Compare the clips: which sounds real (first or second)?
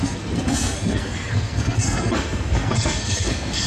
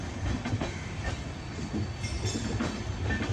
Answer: second